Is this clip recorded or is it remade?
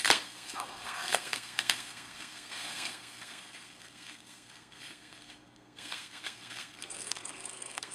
remade